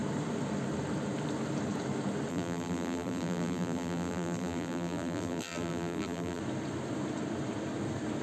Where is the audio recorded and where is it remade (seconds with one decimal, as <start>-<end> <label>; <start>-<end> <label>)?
0.0-2.3 recorded; 2.3-6.4 remade; 6.4-8.2 recorded